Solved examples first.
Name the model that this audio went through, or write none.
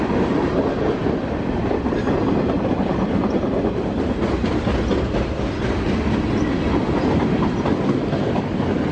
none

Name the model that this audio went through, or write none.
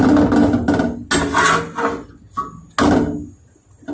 none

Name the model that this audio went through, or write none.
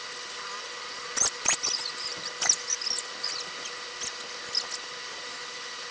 none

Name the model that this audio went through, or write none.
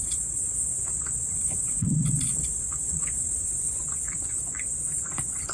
vocoder, Vocos